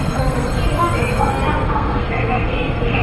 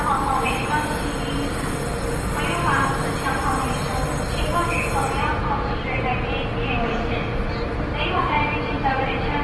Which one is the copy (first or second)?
first